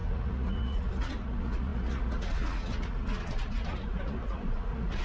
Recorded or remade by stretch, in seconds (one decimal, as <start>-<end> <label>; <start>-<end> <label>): 0.0-5.0 remade

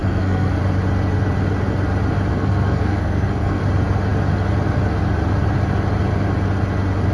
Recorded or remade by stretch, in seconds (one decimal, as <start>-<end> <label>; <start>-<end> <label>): 0.0-0.6 remade; 0.6-2.3 recorded; 2.3-3.6 remade; 3.6-7.1 recorded

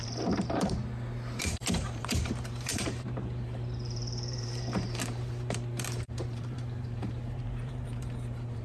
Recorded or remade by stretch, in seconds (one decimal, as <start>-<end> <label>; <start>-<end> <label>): 0.0-0.8 remade; 0.8-1.4 recorded; 1.4-8.6 remade

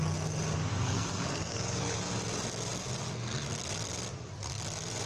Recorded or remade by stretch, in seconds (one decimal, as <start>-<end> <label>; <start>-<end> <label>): 0.0-0.7 recorded; 0.7-2.0 remade; 2.0-5.1 recorded

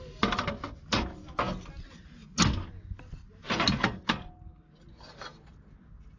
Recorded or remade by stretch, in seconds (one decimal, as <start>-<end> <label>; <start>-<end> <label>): 0.0-6.2 recorded

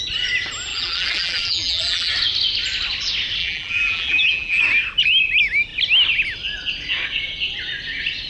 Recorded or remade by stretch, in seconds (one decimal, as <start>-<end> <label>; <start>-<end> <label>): 0.0-0.7 recorded; 0.7-2.1 remade; 2.1-3.4 recorded; 3.4-4.6 remade; 4.6-8.3 recorded

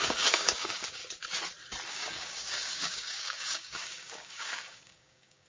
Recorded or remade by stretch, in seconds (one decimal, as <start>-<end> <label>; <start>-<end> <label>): 0.0-1.0 remade; 1.0-1.9 recorded; 1.9-5.5 remade